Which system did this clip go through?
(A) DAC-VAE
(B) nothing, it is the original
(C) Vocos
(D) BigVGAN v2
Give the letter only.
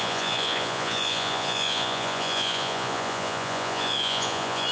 C